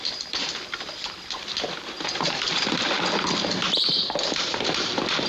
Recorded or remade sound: remade